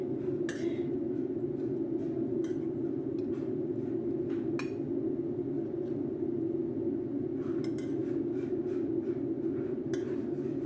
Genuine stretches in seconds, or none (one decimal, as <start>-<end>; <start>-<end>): 0.0-10.7